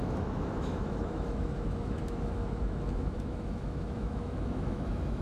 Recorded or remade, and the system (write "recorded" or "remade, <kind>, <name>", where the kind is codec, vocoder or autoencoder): remade, autoencoder, DAC-VAE